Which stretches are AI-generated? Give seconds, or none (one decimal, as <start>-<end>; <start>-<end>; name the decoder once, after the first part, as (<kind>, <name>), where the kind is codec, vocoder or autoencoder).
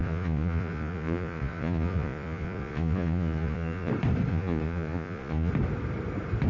0.0-3.9 (vocoder, Vocos); 4.3-5.5